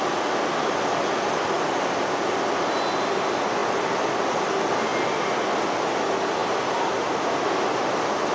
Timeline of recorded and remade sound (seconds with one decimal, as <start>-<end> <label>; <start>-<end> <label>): 0.0-8.3 recorded